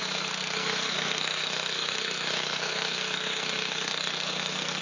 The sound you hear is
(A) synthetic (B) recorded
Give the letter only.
A